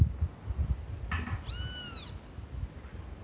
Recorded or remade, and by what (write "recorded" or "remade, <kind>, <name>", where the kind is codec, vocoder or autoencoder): recorded